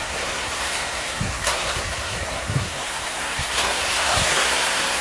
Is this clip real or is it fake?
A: fake